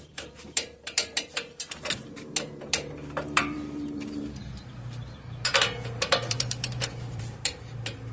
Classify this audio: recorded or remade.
remade